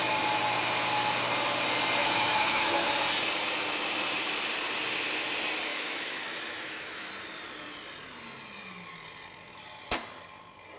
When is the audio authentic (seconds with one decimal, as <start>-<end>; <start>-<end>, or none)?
0.0-2.0; 2.9-5.7; 7.1-10.8